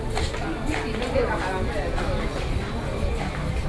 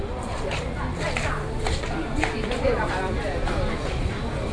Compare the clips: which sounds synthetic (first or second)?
second